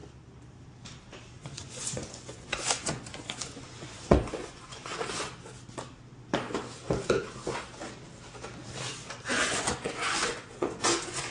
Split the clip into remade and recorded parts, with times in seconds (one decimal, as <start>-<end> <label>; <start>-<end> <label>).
0.0-1.4 recorded; 1.4-4.9 remade; 4.9-9.2 recorded; 9.2-11.3 remade